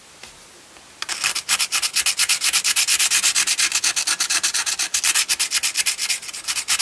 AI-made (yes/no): no